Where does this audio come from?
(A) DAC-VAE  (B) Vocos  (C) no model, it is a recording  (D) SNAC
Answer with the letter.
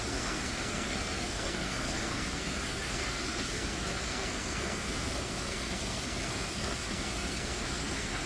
D